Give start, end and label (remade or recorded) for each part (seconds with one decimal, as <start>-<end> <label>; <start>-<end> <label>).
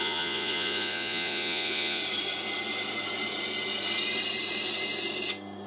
0.0-2.0 remade; 2.0-5.7 recorded